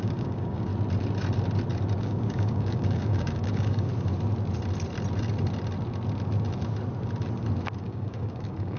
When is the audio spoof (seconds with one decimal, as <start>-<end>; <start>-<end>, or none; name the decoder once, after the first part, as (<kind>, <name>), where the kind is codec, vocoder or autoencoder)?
0.0-0.7 (codec, DAC); 2.0-3.9; 7.8-8.8